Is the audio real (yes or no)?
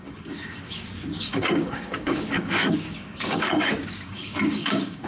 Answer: no